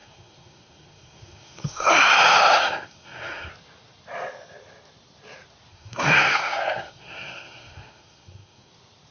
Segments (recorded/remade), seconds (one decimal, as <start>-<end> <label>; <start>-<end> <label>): 0.0-1.9 remade; 1.9-2.6 recorded; 2.6-3.5 remade; 3.5-5.7 recorded; 5.7-8.7 remade; 8.7-9.1 recorded